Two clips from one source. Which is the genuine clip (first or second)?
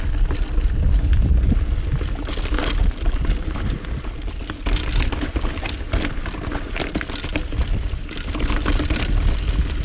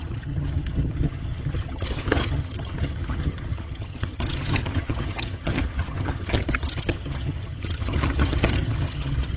first